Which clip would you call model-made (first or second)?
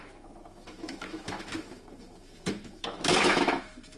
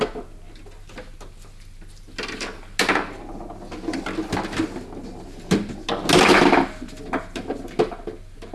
first